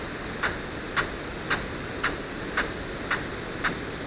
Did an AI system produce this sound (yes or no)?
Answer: no